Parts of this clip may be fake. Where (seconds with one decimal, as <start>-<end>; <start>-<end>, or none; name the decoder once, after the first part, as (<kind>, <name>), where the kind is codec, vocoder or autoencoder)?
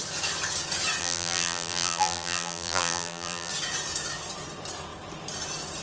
1.0-3.5 (vocoder, BigVGAN v2)